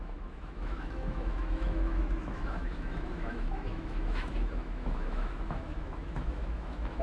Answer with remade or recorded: remade